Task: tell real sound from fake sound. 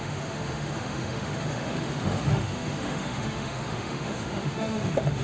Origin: fake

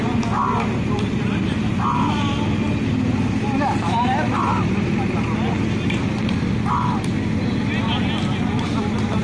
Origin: real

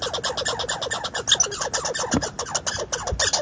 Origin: real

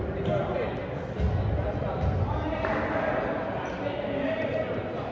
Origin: real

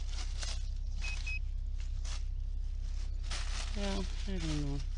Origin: real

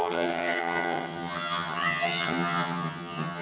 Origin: fake